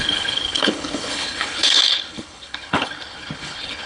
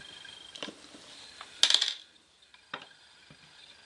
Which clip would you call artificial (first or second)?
first